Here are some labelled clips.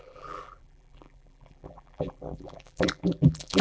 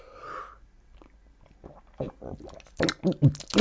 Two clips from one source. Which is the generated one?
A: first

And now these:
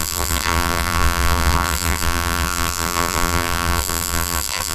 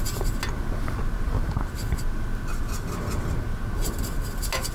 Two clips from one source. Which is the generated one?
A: first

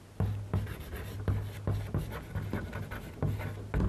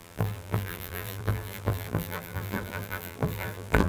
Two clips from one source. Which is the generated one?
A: second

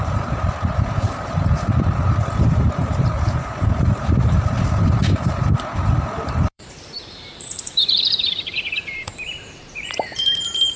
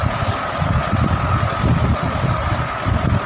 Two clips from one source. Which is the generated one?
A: first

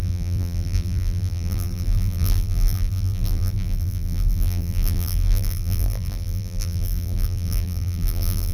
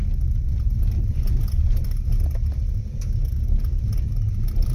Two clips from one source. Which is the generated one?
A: first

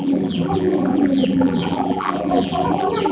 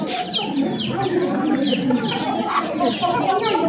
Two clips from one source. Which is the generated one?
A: first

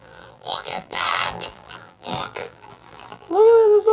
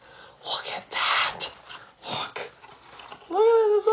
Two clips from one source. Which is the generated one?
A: first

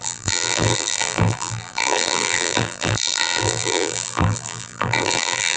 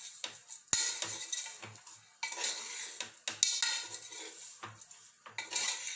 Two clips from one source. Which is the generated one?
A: first